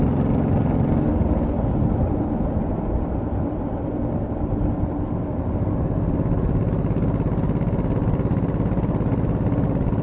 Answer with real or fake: real